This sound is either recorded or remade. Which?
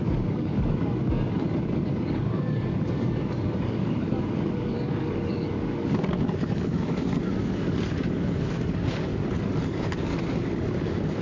remade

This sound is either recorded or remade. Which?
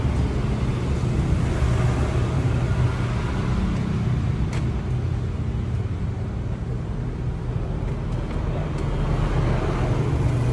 recorded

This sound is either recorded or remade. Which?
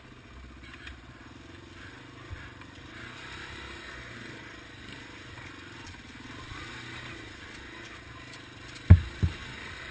recorded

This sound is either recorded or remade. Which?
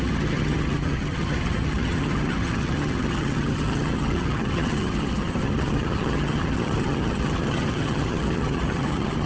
remade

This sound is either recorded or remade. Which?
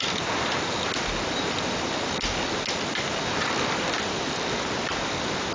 recorded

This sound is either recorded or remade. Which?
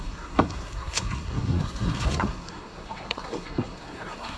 remade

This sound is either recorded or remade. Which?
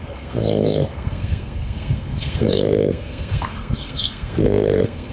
remade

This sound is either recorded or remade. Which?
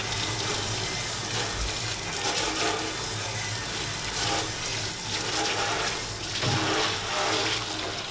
recorded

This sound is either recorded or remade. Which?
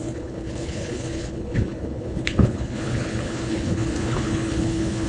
remade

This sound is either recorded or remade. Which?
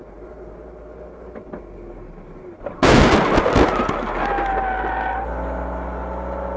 recorded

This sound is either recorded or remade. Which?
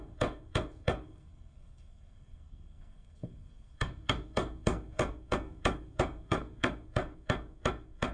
remade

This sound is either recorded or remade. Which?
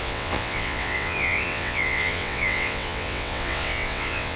remade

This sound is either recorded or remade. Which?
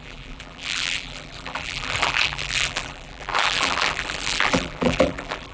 remade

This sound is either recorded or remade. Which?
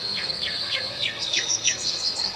remade